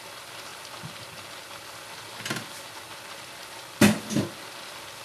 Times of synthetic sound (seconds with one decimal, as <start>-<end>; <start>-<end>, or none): none